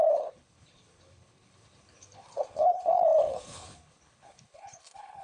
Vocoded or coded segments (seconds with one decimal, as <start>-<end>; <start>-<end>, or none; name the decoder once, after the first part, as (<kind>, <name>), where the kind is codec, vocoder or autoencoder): 0.0-5.2 (codec, HILCodec)